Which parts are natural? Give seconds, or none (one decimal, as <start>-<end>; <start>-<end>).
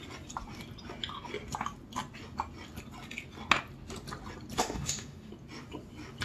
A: 0.0-4.6; 5.3-6.2